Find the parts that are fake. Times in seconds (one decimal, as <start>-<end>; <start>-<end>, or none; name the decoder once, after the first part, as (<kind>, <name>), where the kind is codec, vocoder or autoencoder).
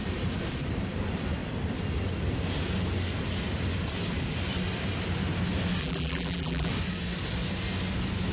5.8-6.7 (vocoder, BigVGAN v2)